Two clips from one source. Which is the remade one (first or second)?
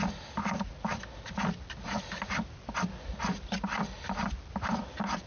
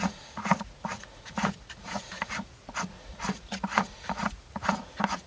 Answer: second